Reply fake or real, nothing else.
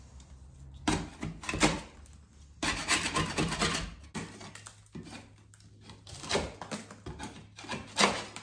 real